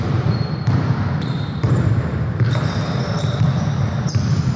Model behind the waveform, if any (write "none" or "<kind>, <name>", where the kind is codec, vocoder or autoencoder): vocoder, BigVGAN v2